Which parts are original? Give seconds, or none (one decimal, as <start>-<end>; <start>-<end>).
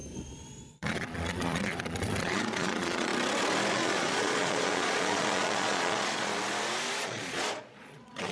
0.0-0.7; 3.1-3.7; 6.3-7.0